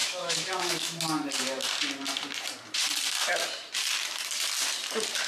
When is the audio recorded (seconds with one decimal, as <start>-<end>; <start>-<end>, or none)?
1.0-5.3

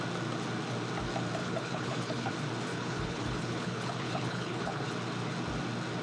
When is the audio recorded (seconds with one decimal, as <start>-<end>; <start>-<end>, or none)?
0.0-1.4; 2.3-2.7; 4.9-6.0